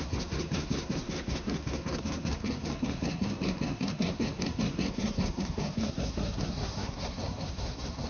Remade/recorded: remade